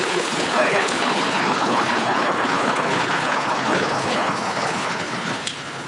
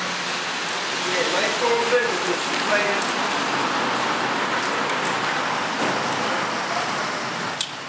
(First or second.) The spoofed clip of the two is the first